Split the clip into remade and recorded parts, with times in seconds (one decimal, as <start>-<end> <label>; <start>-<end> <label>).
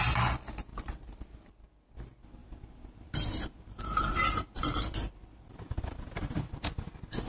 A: 0.0-0.7 recorded; 0.7-1.2 remade; 1.2-2.4 recorded; 2.4-6.5 remade; 6.5-7.3 recorded